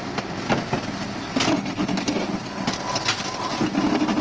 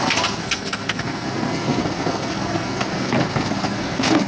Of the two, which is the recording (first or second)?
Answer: first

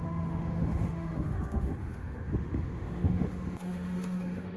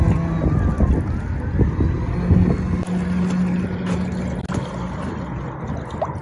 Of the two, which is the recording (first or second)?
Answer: second